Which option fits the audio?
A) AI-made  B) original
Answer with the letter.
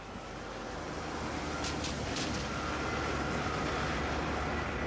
B